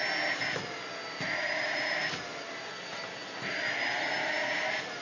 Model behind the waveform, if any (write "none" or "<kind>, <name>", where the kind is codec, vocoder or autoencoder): none